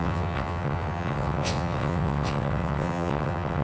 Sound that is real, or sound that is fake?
fake